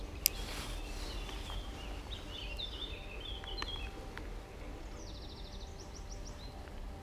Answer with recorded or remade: recorded